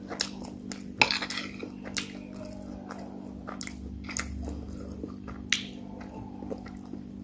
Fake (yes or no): no